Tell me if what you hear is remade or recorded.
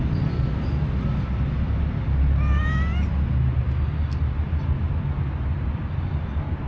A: recorded